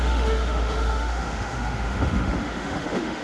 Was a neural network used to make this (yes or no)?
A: yes